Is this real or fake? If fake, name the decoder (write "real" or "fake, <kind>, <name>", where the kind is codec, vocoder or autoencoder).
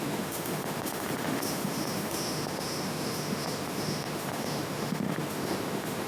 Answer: fake, autoencoder, DAC-VAE